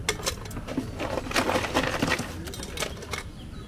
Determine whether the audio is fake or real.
real